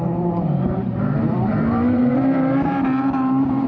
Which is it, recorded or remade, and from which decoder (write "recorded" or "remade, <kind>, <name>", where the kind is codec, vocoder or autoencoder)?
remade, vocoder, BigVGAN v2